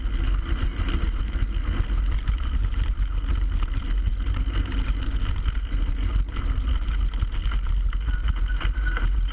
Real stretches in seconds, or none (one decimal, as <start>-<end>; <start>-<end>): 0.0-9.3